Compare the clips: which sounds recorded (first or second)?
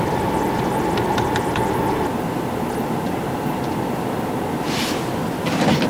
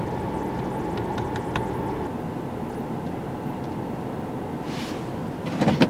second